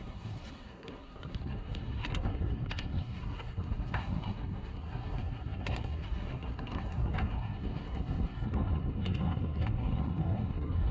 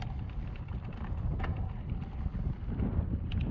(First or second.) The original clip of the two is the second